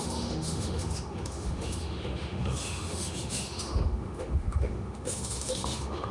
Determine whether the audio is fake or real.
fake